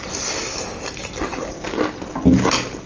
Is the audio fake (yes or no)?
no